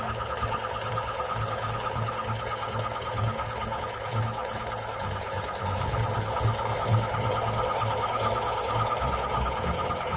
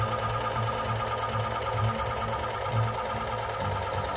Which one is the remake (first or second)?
first